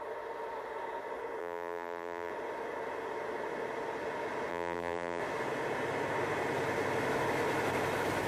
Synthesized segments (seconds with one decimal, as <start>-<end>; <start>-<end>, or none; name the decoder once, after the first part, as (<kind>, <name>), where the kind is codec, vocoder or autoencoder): 1.4-2.3 (vocoder, BigVGAN v2); 4.5-5.2